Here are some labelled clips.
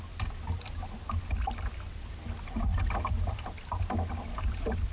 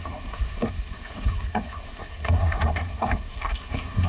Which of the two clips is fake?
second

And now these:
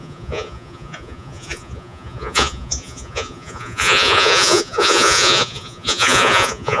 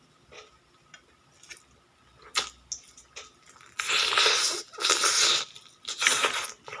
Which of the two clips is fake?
first